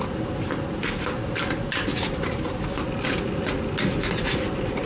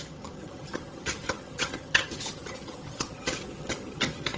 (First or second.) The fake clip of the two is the second